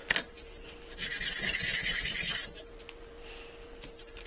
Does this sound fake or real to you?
real